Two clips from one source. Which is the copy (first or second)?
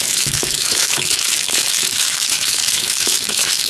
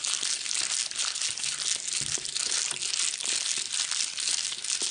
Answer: first